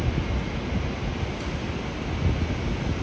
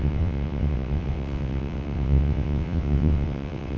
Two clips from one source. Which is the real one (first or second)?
first